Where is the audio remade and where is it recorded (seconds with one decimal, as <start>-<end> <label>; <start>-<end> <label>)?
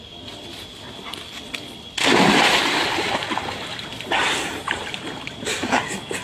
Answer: 0.0-2.1 recorded; 2.1-5.8 remade; 5.8-6.2 recorded